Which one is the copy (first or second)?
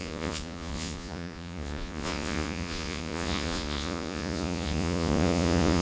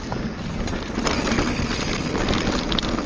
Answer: first